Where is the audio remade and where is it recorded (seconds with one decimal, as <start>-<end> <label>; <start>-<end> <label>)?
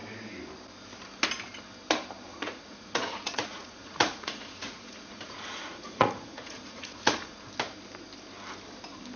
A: 0.0-2.3 recorded; 2.3-7.4 remade; 7.4-9.2 recorded